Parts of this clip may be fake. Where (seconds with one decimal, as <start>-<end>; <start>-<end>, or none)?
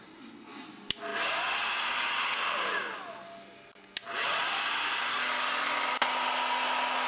none